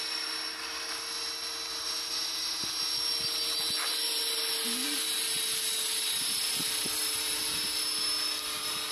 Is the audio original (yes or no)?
yes